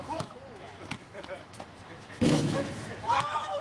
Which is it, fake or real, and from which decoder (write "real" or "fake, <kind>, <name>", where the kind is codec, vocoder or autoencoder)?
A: fake, autoencoder, DAC-VAE